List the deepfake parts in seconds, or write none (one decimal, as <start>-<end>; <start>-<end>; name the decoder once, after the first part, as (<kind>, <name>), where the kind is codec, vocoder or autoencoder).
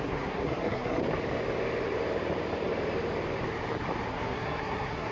0.0-1.0 (codec, SNAC); 4.1-5.1